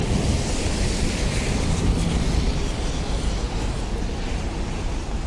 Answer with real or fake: real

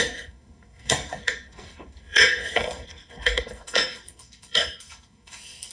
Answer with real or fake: fake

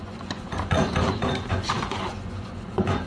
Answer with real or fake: fake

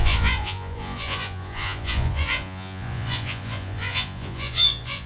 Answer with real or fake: fake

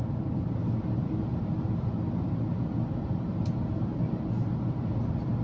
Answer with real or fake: real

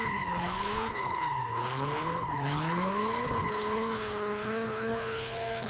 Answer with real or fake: fake